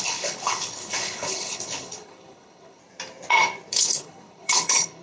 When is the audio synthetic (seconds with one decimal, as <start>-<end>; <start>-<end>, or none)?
0.0-2.8; 3.7-5.0